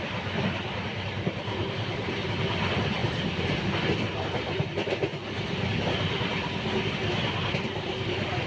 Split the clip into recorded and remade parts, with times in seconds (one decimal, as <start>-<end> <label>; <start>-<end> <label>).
0.0-3.0 recorded; 3.0-3.7 remade; 3.7-8.5 recorded